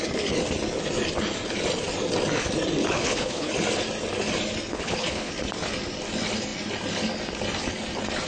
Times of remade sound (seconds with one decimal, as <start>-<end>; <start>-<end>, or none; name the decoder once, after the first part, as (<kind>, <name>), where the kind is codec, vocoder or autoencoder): 2.8-3.5 (codec, HILCodec); 4.7-5.3